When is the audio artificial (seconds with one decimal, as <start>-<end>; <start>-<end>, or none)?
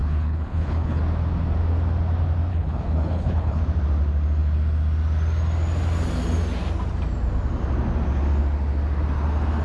0.0-1.0; 2.5-3.6